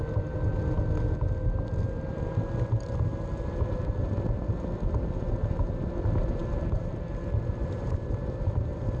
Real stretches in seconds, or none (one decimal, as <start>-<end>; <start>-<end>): 0.0-9.0